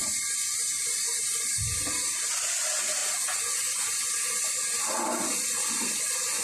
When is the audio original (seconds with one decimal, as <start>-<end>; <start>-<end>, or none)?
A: 0.0-6.4